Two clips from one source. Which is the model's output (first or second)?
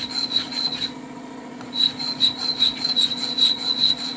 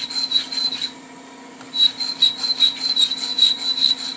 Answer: first